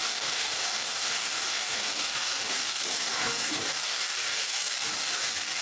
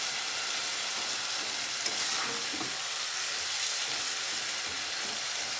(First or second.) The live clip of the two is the second